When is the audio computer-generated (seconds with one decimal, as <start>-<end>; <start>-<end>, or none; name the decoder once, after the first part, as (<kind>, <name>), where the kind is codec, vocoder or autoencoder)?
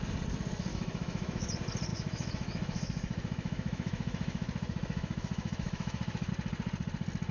0.7-1.5 (autoencoder, DAC-VAE); 1.9-6.3